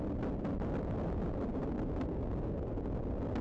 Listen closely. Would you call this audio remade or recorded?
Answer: recorded